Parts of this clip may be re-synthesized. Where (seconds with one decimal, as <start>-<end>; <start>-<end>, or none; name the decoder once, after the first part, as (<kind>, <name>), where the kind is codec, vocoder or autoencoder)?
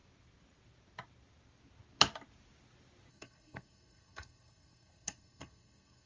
3.1-6.1 (codec, SNAC)